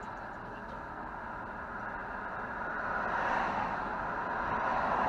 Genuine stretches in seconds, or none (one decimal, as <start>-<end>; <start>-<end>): 0.0-0.4; 1.1-5.1